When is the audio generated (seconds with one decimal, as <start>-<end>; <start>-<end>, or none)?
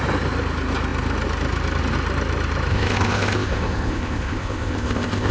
2.7-5.3